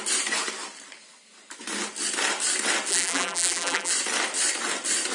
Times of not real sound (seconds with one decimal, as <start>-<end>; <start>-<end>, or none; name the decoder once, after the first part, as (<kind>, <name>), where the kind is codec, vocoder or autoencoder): 2.9-3.9 (vocoder, BigVGAN v2)